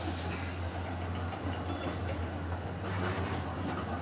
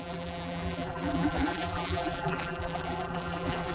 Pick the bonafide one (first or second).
first